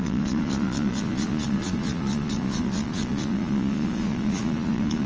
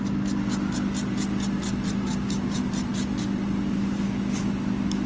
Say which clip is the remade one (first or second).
first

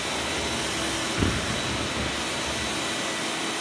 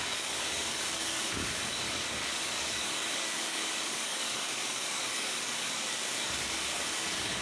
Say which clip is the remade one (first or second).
second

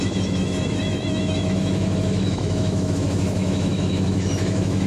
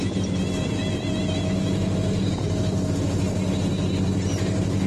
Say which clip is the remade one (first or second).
first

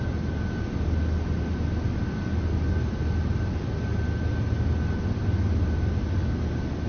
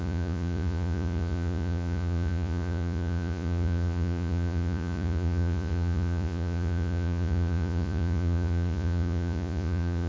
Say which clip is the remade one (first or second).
second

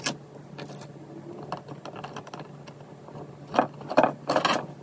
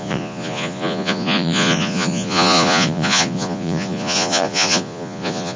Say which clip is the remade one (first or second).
second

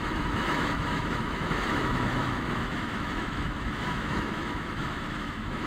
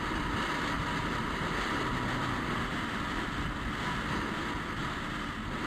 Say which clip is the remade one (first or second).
first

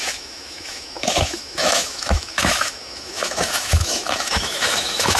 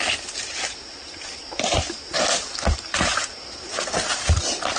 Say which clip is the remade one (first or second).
first